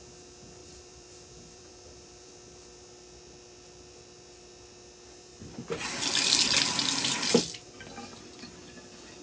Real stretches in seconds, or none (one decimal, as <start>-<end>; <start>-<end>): 0.0-0.6; 2.3-9.2